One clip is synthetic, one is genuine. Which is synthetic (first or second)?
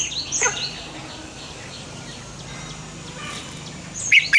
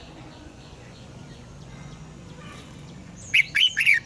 second